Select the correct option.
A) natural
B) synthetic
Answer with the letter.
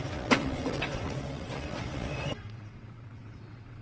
B